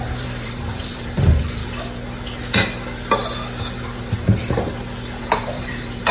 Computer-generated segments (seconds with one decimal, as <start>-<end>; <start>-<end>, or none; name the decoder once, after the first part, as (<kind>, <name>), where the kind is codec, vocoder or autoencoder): 0.0-1.6 (vocoder, BigVGAN v2); 5.2-6.1